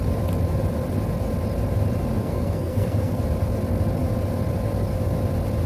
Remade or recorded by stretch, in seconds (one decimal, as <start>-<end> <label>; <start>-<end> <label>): 0.0-2.2 recorded; 2.2-3.2 remade; 3.2-5.7 recorded